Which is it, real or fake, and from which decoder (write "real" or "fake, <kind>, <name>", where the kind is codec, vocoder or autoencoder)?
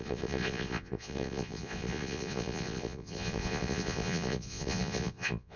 fake, vocoder, Vocos